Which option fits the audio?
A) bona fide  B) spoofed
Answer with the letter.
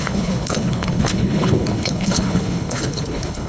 B